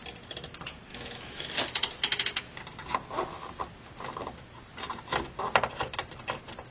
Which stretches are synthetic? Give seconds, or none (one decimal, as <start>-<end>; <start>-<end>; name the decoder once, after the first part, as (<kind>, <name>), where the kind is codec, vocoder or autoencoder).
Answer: 0.9-1.5 (autoencoder, DAC-VAE)